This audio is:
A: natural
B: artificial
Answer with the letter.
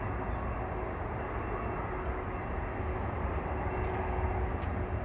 A